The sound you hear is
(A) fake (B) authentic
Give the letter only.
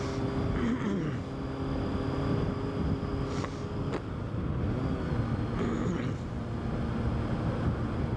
B